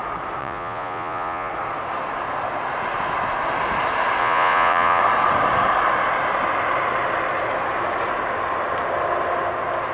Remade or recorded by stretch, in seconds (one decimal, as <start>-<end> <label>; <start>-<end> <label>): 0.0-0.4 recorded; 0.4-1.5 remade; 1.5-4.2 recorded; 4.2-5.0 remade; 5.0-9.9 recorded